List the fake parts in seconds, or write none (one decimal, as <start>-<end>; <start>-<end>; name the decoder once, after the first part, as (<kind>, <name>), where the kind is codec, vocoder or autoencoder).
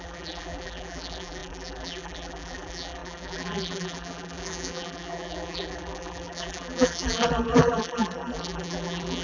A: 0.0-9.2 (vocoder, BigVGAN v2)